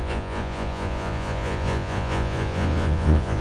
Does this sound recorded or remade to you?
remade